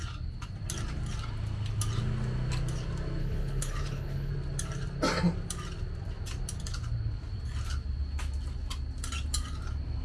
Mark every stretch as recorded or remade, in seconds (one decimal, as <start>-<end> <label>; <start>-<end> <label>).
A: 0.0-3.2 recorded; 3.2-4.3 remade; 4.3-10.0 recorded